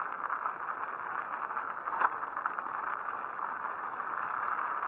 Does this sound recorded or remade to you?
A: recorded